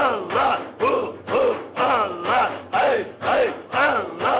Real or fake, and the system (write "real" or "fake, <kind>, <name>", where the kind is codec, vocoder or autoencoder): real